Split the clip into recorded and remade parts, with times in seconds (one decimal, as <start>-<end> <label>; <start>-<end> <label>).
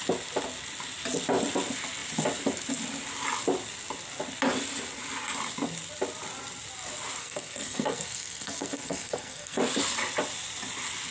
0.0-7.2 recorded; 7.2-9.6 remade; 9.6-11.1 recorded